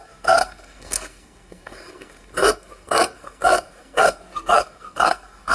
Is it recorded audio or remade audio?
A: remade